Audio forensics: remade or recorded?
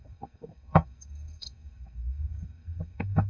remade